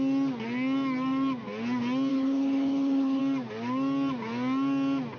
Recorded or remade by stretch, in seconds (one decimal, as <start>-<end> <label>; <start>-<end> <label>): 0.0-2.1 recorded; 2.1-3.2 remade; 3.2-5.2 recorded